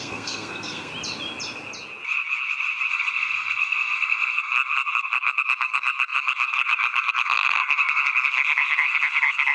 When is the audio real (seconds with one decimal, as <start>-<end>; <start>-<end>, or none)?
0.9-2.9